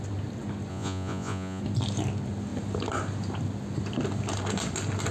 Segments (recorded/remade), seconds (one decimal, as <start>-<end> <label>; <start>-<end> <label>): 0.0-0.7 recorded; 0.7-1.6 remade; 1.6-5.1 recorded